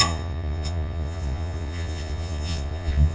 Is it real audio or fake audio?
fake